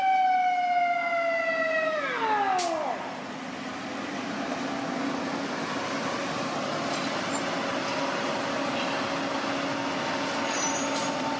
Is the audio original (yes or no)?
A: yes